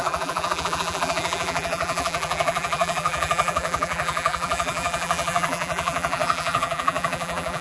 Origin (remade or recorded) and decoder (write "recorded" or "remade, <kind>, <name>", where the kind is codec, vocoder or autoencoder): remade, vocoder, BigVGAN v2